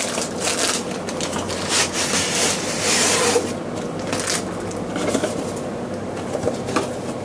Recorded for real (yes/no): yes